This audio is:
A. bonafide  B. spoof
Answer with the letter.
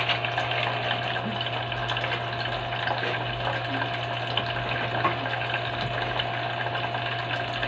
A